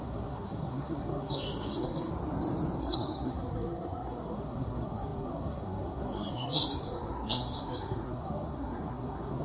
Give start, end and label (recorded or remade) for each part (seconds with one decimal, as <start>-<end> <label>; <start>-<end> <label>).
0.0-2.1 remade; 2.1-2.8 recorded; 2.8-9.4 remade